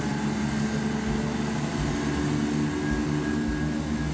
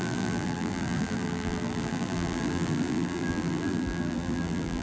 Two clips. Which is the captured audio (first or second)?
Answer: first